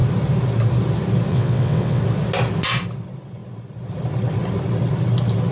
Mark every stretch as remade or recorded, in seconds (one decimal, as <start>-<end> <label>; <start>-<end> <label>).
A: 0.0-1.3 recorded; 1.3-2.0 remade; 2.0-5.5 recorded